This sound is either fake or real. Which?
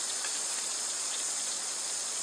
fake